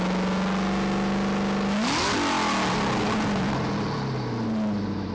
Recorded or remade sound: recorded